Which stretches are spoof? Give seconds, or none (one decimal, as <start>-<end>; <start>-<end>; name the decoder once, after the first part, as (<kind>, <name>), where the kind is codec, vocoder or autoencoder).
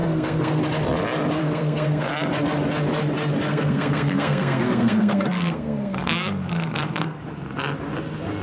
0.0-0.6 (codec, SNAC); 1.4-2.1; 3.5-7.2